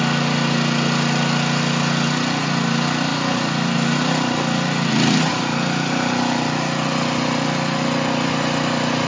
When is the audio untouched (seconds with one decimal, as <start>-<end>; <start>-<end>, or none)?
0.0-9.1